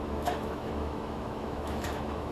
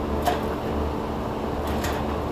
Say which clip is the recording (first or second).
second